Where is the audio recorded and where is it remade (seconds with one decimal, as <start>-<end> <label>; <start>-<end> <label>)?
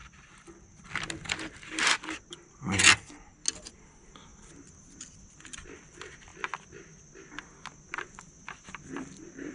0.0-3.7 recorded; 3.7-4.3 remade; 4.3-5.6 recorded; 5.6-6.3 remade; 6.3-8.0 recorded; 8.0-9.5 remade